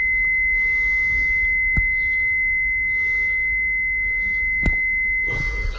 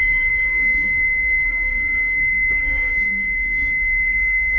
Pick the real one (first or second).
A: first